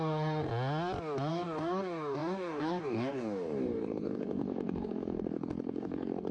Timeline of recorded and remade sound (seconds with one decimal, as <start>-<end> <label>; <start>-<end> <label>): 0.0-0.5 remade; 0.5-1.3 recorded; 1.3-6.3 remade